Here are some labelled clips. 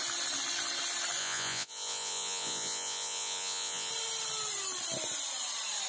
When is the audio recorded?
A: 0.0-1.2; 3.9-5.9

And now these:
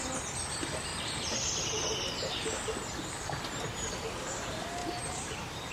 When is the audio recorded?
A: 0.0-4.8

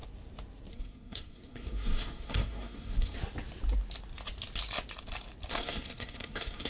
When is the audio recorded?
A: 0.0-0.7; 3.2-5.5